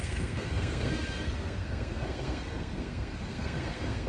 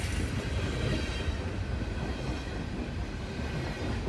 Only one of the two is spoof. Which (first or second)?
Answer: first